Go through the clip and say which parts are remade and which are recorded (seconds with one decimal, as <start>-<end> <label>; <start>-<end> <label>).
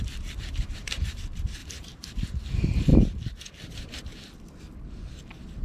0.0-2.9 remade; 2.9-3.6 recorded; 3.6-4.1 remade; 4.1-5.6 recorded